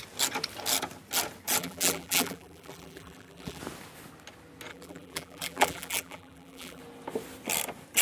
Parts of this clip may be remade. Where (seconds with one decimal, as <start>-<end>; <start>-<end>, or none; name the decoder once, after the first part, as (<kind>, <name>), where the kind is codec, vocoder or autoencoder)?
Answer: 1.6-3.6 (vocoder, BigVGAN v2); 4.7-6.8